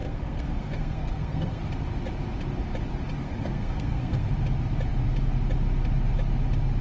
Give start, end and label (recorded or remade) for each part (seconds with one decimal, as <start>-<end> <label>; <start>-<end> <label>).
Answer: 0.0-1.6 remade; 1.6-3.2 recorded; 3.2-4.3 remade; 4.3-6.8 recorded